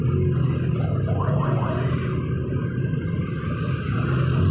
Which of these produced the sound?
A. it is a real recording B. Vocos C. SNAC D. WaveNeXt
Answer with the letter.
A